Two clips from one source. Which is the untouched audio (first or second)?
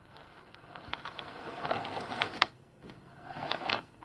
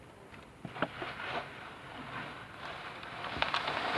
second